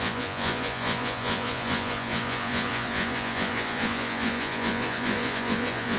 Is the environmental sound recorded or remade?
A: remade